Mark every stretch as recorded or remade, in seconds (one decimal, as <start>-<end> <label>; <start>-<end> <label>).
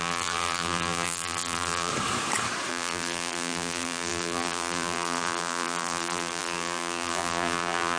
0.0-1.9 remade; 1.9-2.7 recorded; 2.7-8.0 remade